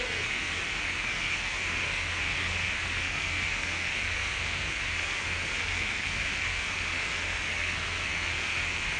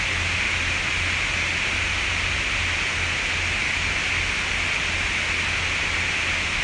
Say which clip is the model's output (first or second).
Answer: first